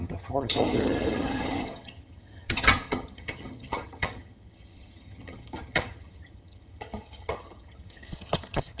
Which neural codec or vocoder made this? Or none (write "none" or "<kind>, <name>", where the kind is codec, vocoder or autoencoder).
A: vocoder, HiFi-GAN